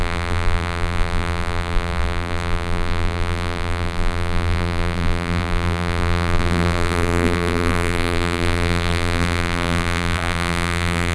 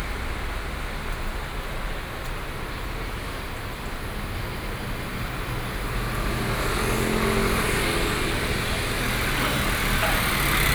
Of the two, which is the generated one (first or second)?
first